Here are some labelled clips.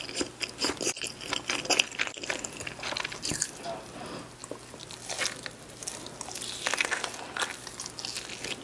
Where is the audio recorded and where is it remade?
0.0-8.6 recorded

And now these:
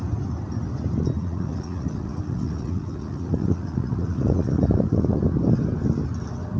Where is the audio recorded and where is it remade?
0.0-1.2 recorded; 1.2-5.2 remade; 5.2-6.6 recorded

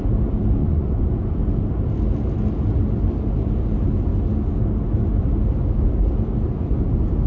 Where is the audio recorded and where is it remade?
0.0-0.6 recorded; 0.6-1.1 remade; 1.1-7.3 recorded

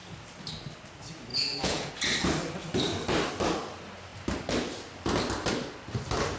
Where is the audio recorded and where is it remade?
0.0-1.3 recorded; 1.3-1.9 remade; 1.9-6.4 recorded

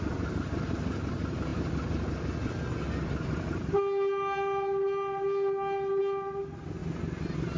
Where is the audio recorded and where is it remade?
0.0-7.6 recorded

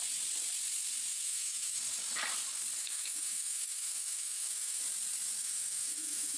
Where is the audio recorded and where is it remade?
0.0-1.1 recorded; 1.1-1.8 remade; 1.8-2.8 recorded; 2.8-4.8 remade; 4.8-5.4 recorded; 5.4-6.4 remade

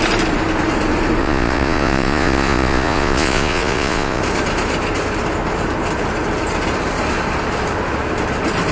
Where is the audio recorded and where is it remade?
0.0-1.2 recorded; 1.2-4.2 remade; 4.2-8.7 recorded

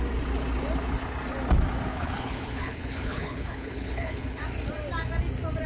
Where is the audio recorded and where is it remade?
0.0-1.9 recorded; 1.9-4.4 remade; 4.4-5.7 recorded